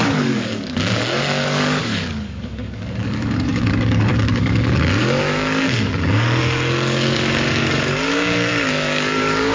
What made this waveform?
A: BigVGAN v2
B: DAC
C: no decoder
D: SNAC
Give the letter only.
B